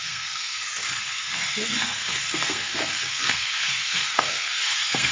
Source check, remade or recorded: remade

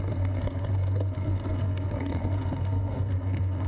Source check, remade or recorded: remade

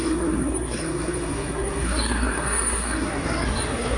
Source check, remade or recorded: remade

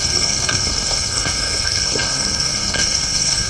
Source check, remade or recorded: remade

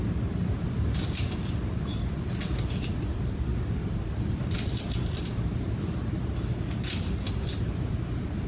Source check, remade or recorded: recorded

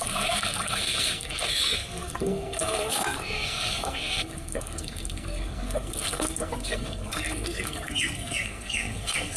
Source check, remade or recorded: remade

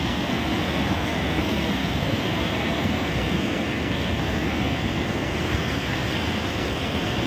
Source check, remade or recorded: remade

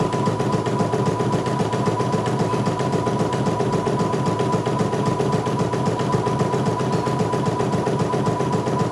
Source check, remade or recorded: recorded